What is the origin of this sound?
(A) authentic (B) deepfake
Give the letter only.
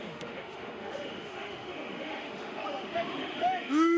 B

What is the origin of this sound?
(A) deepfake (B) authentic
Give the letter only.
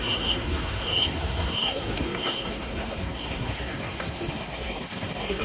A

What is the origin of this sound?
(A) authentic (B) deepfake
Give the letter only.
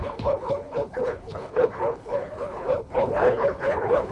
B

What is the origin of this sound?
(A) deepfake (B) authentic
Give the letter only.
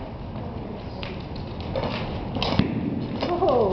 B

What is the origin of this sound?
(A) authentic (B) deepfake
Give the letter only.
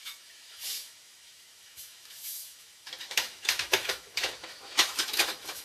B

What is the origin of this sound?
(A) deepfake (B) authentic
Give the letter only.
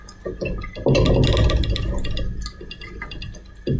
B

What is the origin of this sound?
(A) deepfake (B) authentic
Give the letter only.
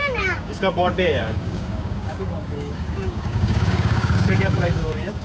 A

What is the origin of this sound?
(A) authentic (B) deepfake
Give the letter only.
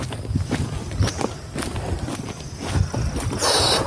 A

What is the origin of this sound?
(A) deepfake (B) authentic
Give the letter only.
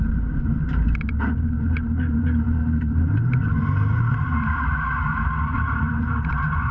A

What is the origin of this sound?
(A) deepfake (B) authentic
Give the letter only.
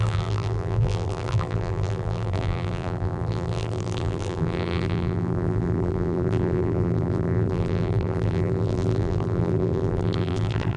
A